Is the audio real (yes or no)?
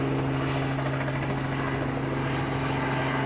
yes